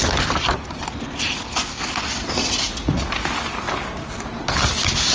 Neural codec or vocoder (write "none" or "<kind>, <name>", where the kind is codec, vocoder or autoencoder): none